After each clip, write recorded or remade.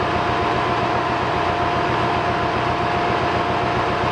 recorded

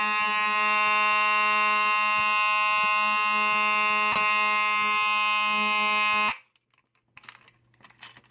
recorded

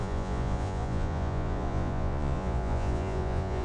remade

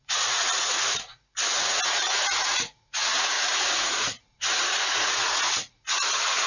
remade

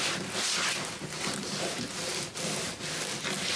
recorded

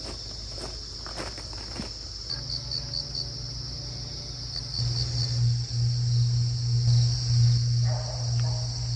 recorded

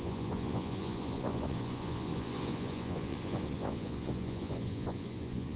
remade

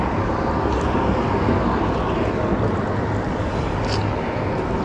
recorded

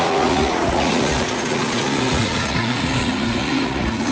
remade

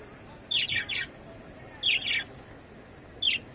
recorded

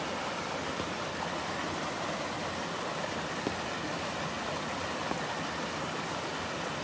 recorded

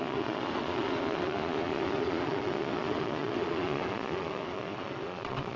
remade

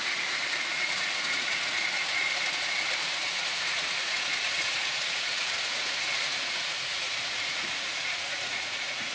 remade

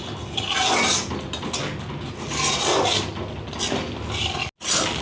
recorded